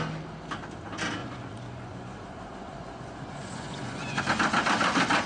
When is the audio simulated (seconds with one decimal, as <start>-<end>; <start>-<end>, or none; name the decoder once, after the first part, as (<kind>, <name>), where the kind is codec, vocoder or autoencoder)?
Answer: 1.2-4.2 (vocoder, Vocos)